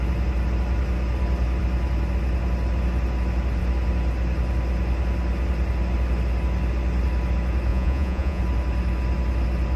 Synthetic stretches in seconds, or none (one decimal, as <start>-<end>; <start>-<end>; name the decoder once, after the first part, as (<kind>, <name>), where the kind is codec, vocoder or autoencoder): 7.7-8.4 (vocoder, Vocos)